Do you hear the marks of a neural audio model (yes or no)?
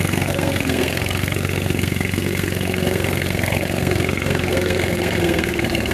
yes